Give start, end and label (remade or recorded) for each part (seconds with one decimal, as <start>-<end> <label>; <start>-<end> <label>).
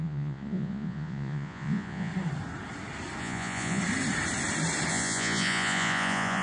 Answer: 0.0-2.1 remade; 2.1-3.2 recorded; 3.2-3.8 remade; 3.8-4.9 recorded; 4.9-6.4 remade